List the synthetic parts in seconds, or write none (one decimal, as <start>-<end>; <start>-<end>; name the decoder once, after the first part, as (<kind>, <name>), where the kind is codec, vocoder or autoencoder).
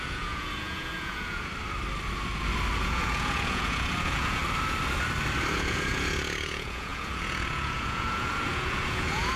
0.0-1.5 (vocoder, Vocos); 2.8-4.4; 5.5-9.4